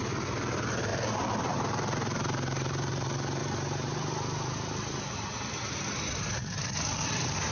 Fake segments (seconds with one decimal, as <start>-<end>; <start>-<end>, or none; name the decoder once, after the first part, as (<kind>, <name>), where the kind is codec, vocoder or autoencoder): 0.9-2.9 (vocoder, BigVGAN v2); 3.4-4.1